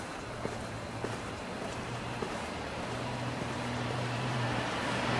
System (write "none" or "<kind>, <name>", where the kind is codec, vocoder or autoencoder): vocoder, BigVGAN v2